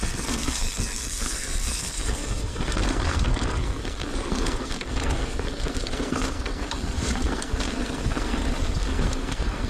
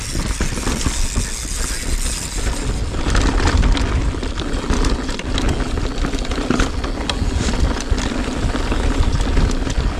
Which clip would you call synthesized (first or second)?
first